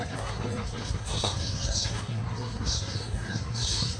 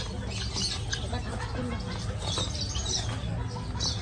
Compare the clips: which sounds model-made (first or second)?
first